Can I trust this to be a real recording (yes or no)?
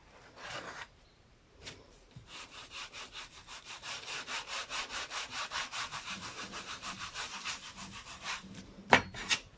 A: no